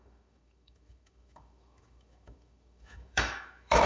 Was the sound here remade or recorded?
remade